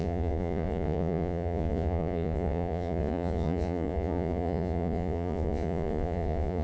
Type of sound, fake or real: fake